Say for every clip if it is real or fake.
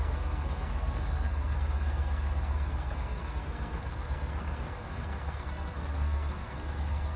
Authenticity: fake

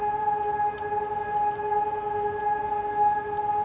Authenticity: real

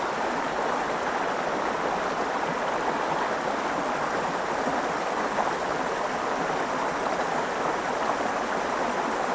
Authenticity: real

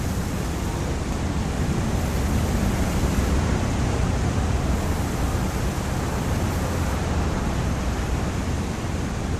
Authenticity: real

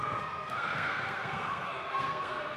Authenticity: fake